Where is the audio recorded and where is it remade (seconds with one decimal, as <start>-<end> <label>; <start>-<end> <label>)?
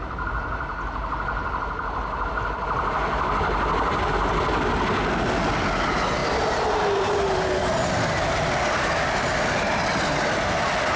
0.0-11.0 recorded